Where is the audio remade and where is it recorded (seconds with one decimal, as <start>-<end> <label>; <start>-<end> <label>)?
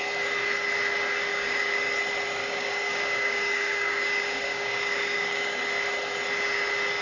0.0-1.3 recorded; 1.3-1.9 remade; 1.9-2.4 recorded; 2.4-5.6 remade; 5.6-7.0 recorded